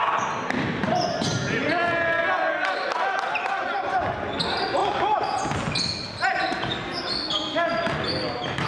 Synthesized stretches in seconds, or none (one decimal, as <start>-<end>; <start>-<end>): none